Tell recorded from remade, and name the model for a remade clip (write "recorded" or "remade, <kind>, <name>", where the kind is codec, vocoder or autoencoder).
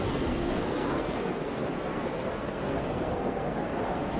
remade, codec, SNAC